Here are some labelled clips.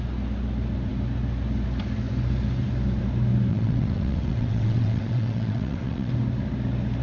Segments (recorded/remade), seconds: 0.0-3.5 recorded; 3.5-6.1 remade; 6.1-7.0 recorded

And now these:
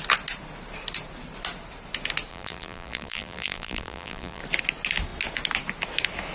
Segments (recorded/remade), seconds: 0.0-2.3 recorded; 2.3-4.4 remade; 4.4-6.3 recorded